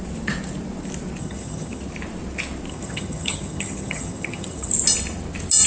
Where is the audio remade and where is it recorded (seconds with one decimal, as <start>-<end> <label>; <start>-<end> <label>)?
0.0-1.2 recorded; 1.2-1.8 remade; 1.8-2.7 recorded; 2.7-4.7 remade; 4.7-5.7 recorded